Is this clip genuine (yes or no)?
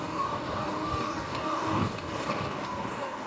no